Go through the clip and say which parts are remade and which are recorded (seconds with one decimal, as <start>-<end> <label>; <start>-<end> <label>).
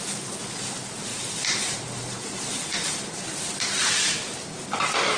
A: 0.0-1.1 recorded; 1.1-3.2 remade; 3.2-5.2 recorded